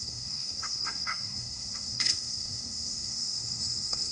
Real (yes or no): no